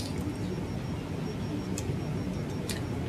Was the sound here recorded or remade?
recorded